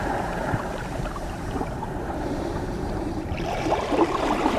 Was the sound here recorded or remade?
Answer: remade